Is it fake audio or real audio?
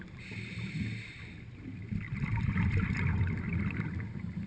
real